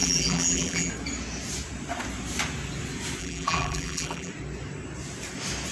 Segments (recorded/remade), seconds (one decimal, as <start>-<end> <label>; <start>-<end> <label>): 0.0-0.9 remade; 0.9-3.2 recorded; 3.2-4.3 remade; 4.3-5.7 recorded